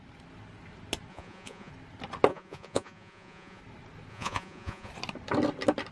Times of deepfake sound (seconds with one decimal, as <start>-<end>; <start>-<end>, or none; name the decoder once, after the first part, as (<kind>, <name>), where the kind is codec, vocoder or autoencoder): 1.1-1.7 (vocoder, Vocos); 2.3-3.6; 4.1-4.9